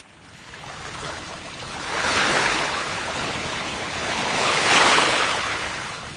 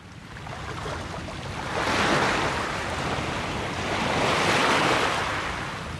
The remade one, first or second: first